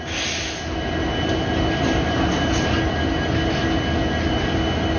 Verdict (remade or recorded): recorded